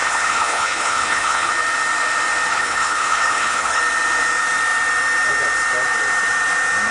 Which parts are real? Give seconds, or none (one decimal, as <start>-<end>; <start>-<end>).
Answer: 1.5-2.5; 3.8-6.9